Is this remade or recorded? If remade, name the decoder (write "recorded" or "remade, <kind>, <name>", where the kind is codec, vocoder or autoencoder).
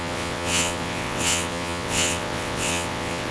remade, vocoder, WaveNeXt